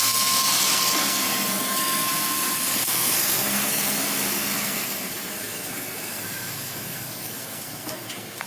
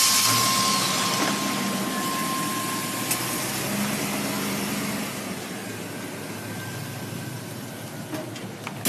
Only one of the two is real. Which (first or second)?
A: second